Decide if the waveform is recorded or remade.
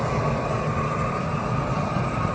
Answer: recorded